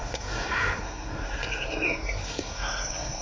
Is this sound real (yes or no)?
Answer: no